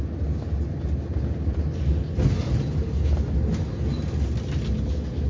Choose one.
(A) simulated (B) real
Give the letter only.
B